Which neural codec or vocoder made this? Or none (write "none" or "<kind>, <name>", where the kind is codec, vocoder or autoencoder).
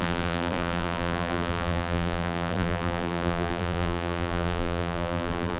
vocoder, BigVGAN v2